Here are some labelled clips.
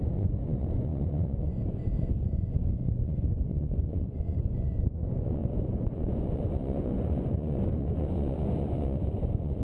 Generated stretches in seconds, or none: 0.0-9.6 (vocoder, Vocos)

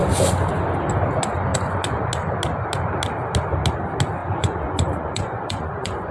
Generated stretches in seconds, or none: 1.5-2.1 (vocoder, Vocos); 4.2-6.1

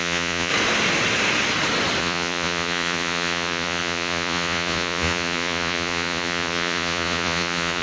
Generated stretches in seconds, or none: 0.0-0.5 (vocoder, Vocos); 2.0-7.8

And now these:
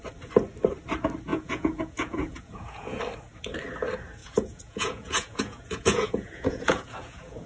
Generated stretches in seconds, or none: 1.3-3.0 (vocoder, Vocos); 4.2-7.5

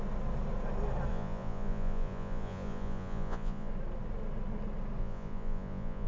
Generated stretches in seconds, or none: 1.1-3.7 (vocoder, Vocos); 5.0-6.1

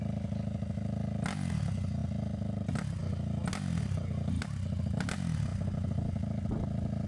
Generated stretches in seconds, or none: none

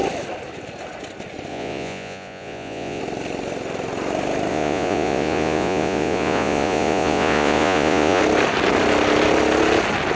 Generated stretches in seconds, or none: 1.5-3.0 (vocoder, Vocos); 4.5-8.2

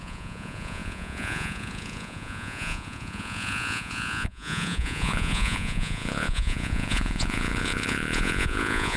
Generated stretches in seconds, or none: 0.0-9.0 (vocoder, Vocos)